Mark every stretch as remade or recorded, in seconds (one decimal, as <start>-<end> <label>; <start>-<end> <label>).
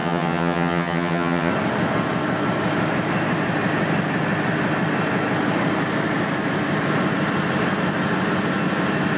0.0-1.5 remade; 1.5-9.2 recorded